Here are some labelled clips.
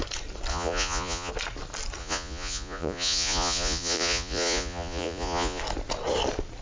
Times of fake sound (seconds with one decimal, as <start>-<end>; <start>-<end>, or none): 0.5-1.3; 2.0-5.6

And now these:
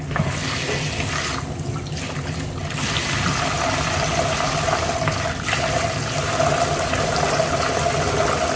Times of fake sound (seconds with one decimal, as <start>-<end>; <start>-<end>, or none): none

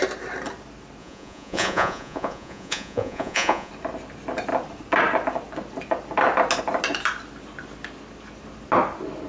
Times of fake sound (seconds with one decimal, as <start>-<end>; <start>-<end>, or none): 1.0-3.7

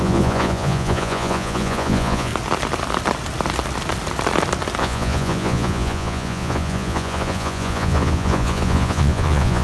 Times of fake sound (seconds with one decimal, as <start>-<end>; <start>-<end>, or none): 0.0-2.3; 4.8-9.6

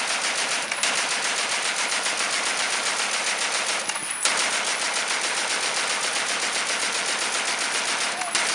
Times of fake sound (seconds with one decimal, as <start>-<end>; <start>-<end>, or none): none

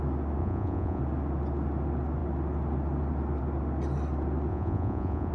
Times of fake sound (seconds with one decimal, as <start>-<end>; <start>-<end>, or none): 0.4-1.0; 4.5-5.3

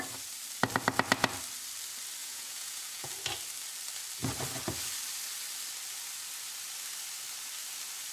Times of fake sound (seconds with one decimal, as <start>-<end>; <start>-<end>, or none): 2.2-3.1